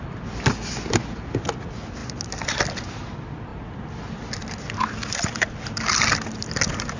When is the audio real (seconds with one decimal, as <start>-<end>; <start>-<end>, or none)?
0.0-7.0